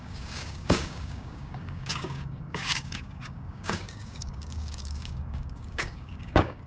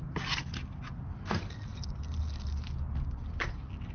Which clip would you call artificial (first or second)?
first